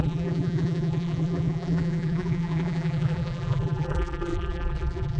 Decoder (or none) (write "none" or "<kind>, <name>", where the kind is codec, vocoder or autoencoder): vocoder, BigVGAN v2